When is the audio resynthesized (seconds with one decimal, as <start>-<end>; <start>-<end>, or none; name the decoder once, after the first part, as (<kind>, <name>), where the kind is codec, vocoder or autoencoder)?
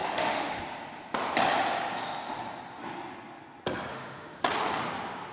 0.0-0.6 (autoencoder, DAC-VAE); 3.9-4.4